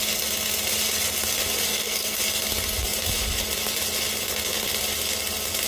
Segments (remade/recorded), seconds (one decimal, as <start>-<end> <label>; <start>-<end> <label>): 0.0-1.7 recorded; 1.7-2.2 remade; 2.2-5.7 recorded